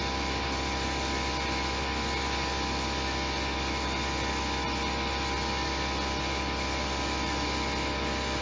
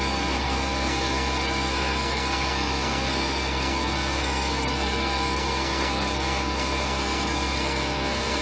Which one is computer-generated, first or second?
second